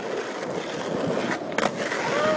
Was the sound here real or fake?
real